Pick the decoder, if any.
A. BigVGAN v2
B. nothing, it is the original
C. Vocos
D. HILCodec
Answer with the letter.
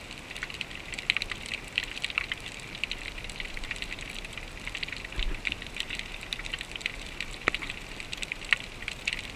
B